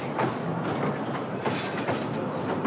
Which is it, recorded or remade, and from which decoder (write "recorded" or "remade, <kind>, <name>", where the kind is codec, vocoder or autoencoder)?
recorded